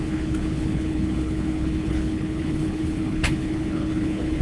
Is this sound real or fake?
fake